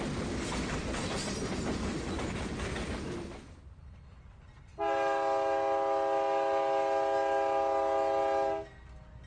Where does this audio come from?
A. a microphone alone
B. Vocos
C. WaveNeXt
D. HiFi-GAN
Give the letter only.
A